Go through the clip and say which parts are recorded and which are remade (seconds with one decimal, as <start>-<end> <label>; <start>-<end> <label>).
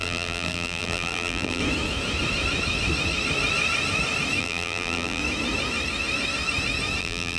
0.0-1.6 remade; 1.6-4.4 recorded; 4.4-5.2 remade; 5.2-7.0 recorded; 7.0-7.4 remade